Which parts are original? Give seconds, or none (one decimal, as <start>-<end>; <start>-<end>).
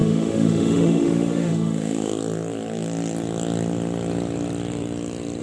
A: 2.1-5.4